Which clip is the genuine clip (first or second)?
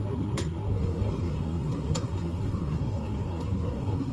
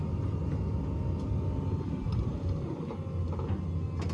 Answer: second